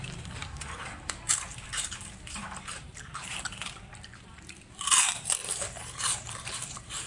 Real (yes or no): no